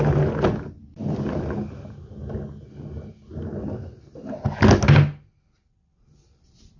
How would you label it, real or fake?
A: real